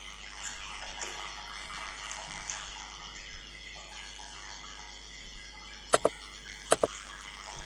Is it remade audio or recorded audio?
remade